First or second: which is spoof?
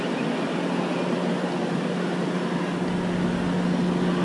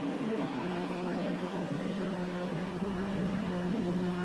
second